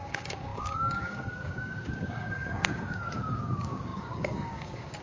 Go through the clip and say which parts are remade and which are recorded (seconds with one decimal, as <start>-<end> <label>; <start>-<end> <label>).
0.0-5.0 remade